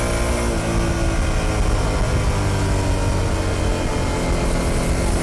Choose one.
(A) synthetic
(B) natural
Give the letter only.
B